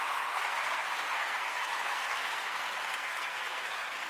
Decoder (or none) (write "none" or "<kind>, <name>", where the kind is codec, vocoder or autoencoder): codec, SNAC